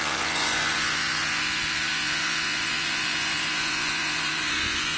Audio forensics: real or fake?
fake